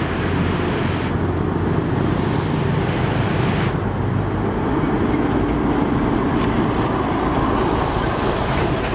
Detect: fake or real real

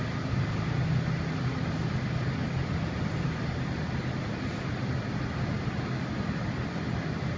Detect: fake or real real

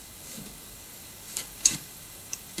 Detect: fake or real fake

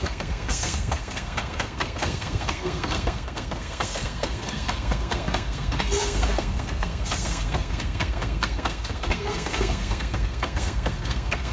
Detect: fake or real fake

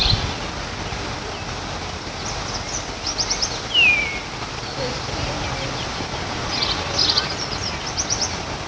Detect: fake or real real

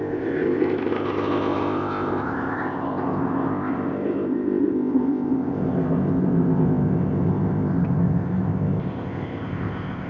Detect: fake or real fake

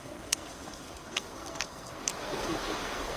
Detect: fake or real fake